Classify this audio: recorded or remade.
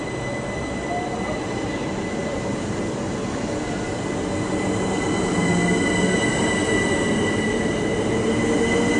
recorded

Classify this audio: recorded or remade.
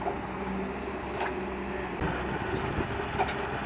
recorded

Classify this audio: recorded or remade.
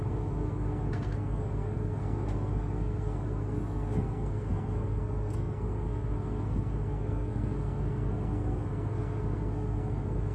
remade